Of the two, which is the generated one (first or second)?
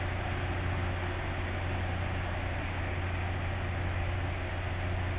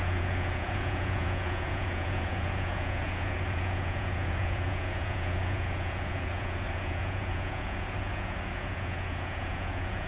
second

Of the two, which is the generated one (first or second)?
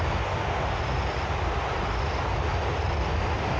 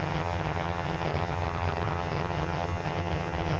second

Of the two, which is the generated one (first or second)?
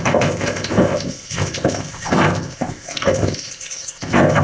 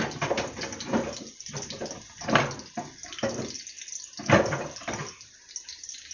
first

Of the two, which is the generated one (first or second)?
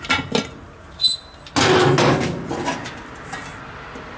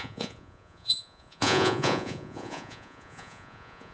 second